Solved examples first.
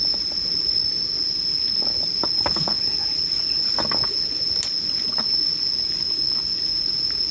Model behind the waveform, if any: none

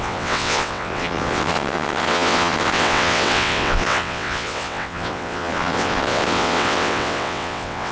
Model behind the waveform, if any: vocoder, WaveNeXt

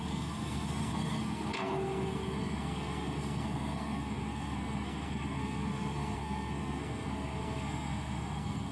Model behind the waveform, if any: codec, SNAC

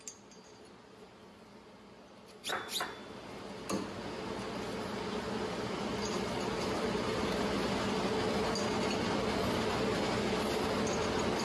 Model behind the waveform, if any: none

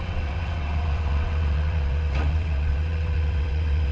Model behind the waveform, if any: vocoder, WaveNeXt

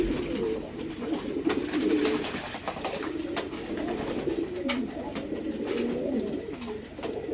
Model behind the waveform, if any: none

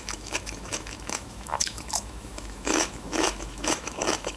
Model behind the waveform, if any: autoencoder, DAC-VAE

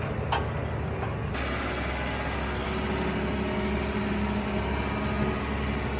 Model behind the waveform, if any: none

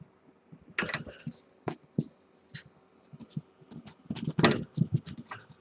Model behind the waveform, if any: none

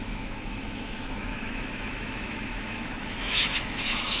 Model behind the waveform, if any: autoencoder, DAC-VAE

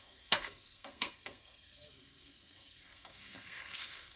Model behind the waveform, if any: codec, SNAC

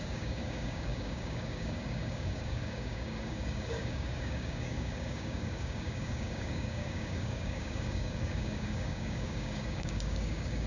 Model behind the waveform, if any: codec, DAC